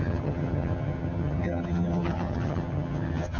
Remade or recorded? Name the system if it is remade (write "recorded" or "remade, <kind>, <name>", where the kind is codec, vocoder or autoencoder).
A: remade, vocoder, HiFi-GAN